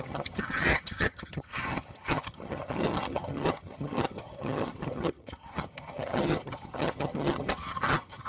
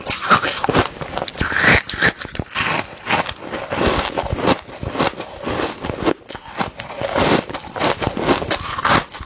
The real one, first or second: second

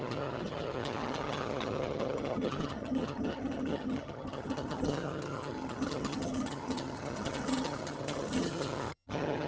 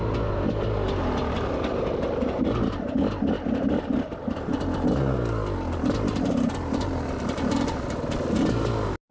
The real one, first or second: second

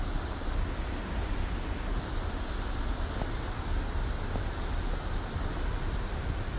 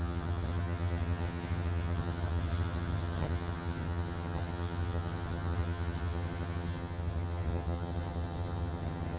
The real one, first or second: first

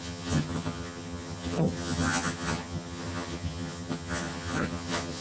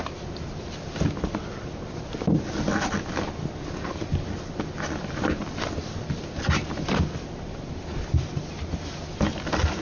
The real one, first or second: second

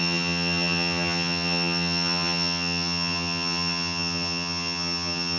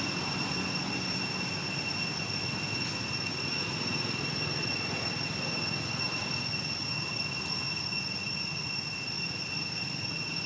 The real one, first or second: second